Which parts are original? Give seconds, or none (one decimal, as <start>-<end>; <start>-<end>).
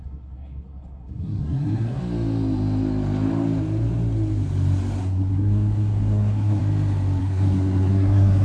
2.0-5.0; 6.6-7.2